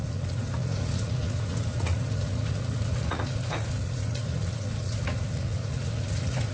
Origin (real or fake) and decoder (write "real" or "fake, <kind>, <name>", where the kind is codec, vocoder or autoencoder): fake, vocoder, Vocos